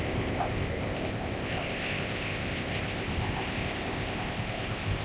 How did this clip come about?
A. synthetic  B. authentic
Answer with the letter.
A